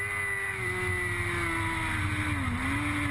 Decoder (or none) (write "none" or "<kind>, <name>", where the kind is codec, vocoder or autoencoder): none